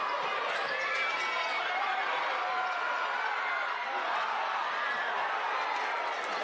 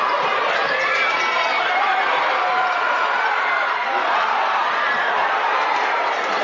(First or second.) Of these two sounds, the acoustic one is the first